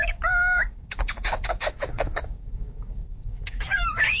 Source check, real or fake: fake